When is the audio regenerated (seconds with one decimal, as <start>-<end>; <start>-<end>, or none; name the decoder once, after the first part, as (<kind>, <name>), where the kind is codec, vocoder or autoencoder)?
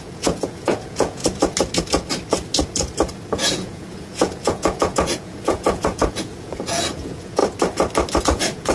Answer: 0.0-1.2 (vocoder, Vocos); 3.3-7.4; 8.2-8.7